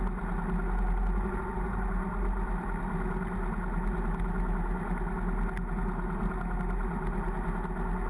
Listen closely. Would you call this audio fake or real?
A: real